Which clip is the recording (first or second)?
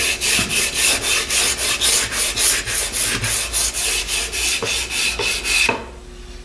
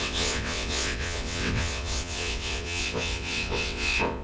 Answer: first